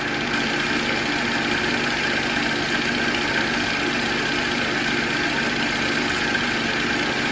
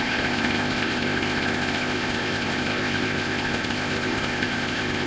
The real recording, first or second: first